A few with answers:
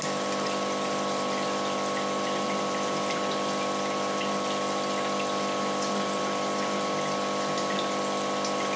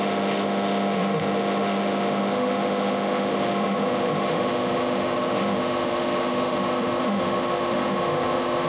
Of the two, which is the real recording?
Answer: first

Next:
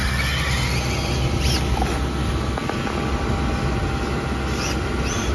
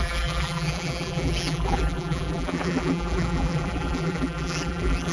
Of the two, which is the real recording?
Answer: first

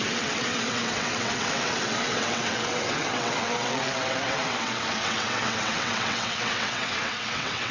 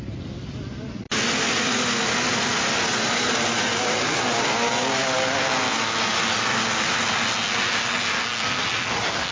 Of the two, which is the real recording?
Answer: second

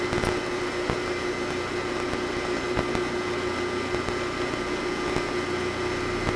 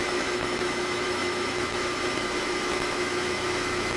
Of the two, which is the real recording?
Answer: first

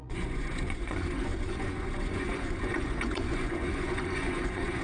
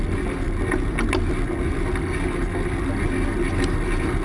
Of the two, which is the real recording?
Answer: second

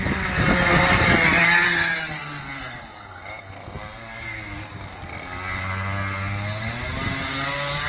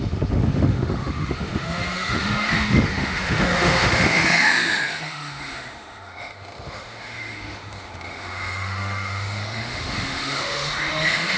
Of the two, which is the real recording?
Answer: first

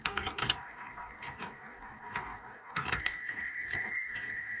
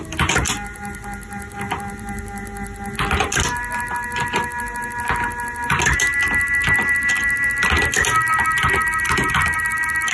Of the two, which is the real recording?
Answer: second